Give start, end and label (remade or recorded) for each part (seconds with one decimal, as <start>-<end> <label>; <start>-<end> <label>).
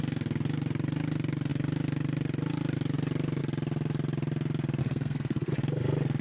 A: 0.0-4.8 recorded; 4.8-5.5 remade; 5.5-6.2 recorded